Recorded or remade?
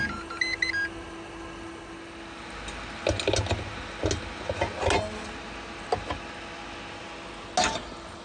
recorded